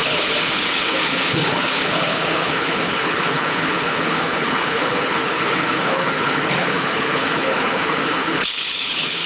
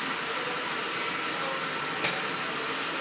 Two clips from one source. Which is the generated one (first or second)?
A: first